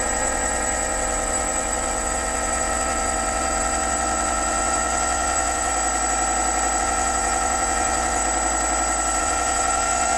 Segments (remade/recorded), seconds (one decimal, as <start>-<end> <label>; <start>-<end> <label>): 0.0-5.7 remade; 5.7-6.8 recorded; 6.8-8.2 remade; 8.2-9.2 recorded; 9.2-10.2 remade